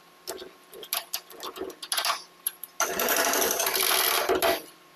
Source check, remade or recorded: recorded